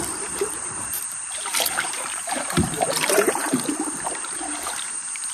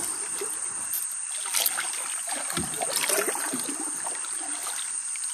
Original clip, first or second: second